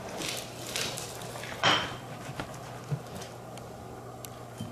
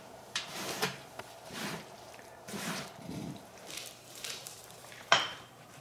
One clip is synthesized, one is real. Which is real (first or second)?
first